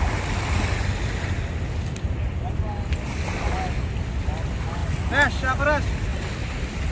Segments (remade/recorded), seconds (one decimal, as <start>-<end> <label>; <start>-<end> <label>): 0.0-6.9 recorded